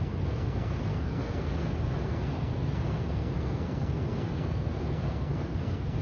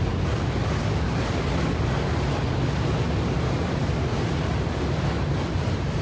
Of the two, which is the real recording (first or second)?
second